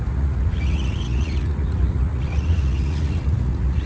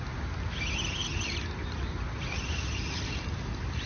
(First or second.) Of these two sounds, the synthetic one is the first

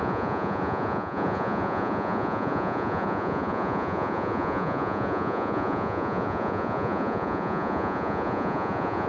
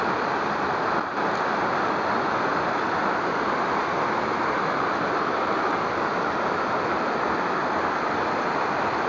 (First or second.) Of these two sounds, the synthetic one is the first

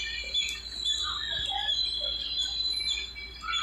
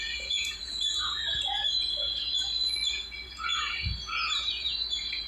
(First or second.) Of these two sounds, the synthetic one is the second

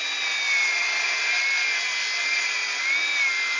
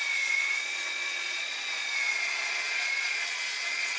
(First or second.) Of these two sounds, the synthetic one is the second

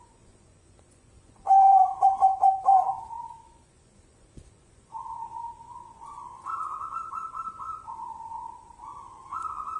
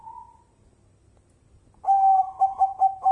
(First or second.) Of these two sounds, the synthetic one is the first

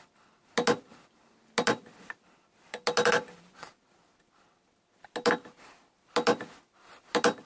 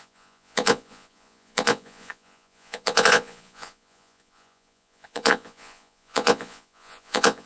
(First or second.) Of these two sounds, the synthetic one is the second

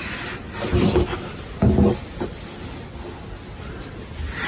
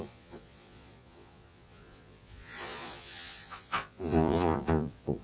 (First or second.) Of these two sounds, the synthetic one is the second